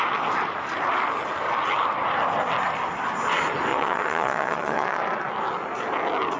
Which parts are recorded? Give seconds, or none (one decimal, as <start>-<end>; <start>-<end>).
0.0-3.7; 5.0-6.4